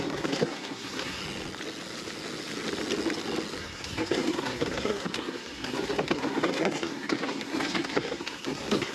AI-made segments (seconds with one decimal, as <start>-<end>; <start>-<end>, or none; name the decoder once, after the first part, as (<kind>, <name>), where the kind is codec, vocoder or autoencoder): 0.0-1.2 (codec, SNAC); 3.6-8.9